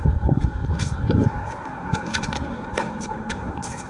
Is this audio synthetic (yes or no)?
yes